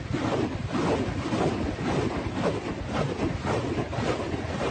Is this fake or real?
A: real